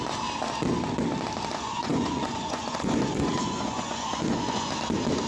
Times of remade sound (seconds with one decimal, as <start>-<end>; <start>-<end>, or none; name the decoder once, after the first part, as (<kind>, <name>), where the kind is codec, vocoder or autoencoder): 1.5-4.7 (vocoder, Vocos)